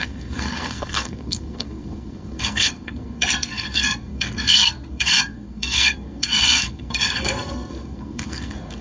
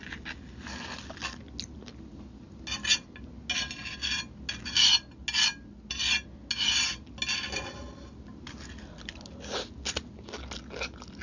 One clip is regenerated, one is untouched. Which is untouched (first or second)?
second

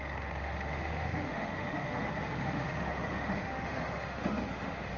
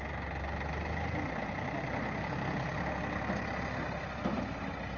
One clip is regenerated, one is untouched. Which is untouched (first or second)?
second